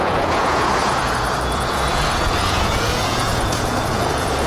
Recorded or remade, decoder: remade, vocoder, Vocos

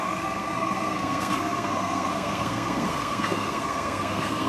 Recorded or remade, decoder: remade, codec, SNAC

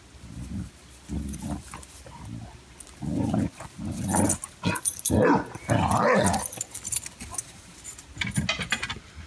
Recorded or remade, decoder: recorded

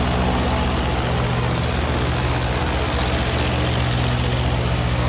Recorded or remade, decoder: recorded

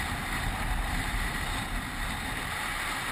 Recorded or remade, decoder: recorded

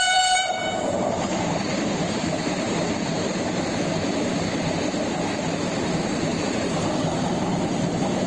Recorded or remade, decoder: remade, vocoder, BigVGAN v2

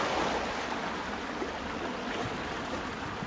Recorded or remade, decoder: recorded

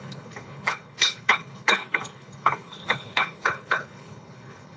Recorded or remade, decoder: remade, codec, HILCodec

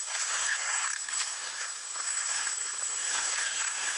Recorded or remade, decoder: remade, codec, SNAC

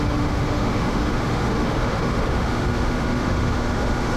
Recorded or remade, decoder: remade, autoencoder, DAC-VAE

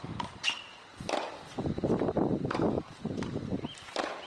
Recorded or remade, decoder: remade, vocoder, BigVGAN v2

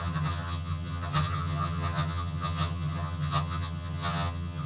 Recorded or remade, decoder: remade, vocoder, HiFi-GAN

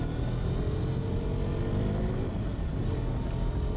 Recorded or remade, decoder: recorded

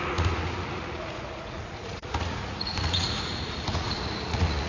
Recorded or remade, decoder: remade, vocoder, Vocos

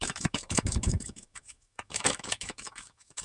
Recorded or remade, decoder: remade, autoencoder, DAC-VAE